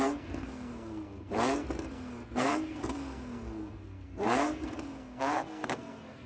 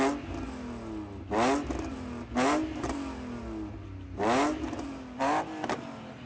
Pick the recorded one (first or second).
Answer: second